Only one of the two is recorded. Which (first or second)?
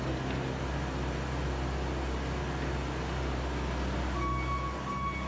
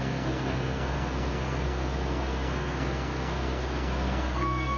first